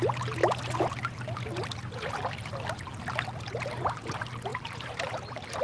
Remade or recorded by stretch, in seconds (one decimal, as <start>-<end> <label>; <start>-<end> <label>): 0.0-5.6 recorded